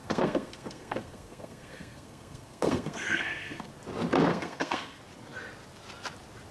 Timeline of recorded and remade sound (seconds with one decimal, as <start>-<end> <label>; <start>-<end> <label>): 0.0-3.7 remade; 3.7-4.3 recorded; 4.3-5.0 remade; 5.0-6.5 recorded